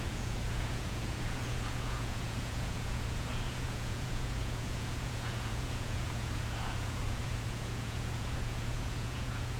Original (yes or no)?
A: no